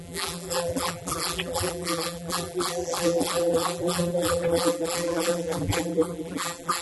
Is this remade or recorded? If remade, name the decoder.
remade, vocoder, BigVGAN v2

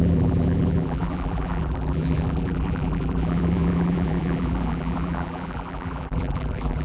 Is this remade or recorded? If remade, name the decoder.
remade, vocoder, BigVGAN v2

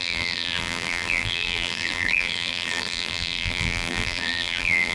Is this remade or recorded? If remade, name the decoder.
remade, vocoder, BigVGAN v2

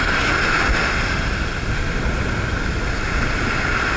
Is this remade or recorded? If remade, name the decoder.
recorded